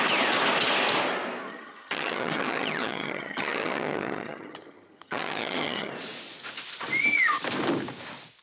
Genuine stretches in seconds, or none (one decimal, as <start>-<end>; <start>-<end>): 0.0-1.5; 5.9-8.4